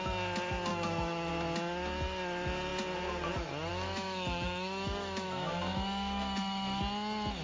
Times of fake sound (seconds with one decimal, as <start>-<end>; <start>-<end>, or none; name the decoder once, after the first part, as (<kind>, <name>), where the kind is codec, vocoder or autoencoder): 0.7-1.3 (autoencoder, DAC-VAE); 3.7-6.8